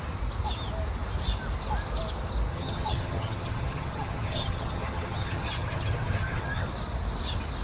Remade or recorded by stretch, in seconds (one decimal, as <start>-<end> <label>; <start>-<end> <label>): 0.0-2.5 recorded; 2.5-6.7 remade; 6.7-7.6 recorded